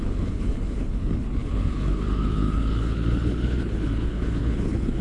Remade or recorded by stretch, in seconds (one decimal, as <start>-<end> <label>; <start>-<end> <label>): 0.0-5.0 remade